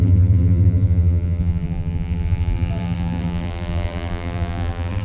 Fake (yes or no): yes